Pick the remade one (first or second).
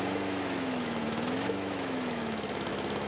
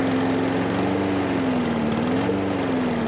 first